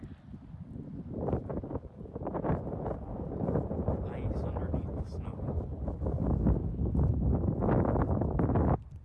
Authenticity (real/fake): real